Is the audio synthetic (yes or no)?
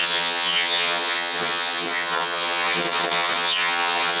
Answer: yes